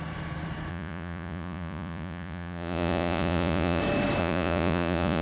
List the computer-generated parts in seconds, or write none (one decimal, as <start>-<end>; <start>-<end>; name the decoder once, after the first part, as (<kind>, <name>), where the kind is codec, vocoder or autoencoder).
0.7-3.8 (vocoder, Vocos); 4.2-5.2

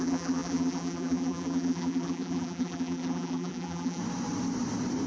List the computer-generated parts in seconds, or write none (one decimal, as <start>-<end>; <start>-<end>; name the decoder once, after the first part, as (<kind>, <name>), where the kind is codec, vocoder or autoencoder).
0.0-4.0 (vocoder, BigVGAN v2)

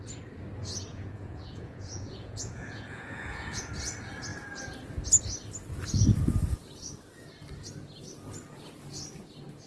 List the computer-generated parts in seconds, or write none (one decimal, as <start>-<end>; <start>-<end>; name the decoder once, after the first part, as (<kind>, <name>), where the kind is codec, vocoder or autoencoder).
0.9-3.7 (vocoder, Vocos)